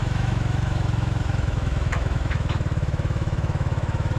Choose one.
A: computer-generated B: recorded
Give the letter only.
A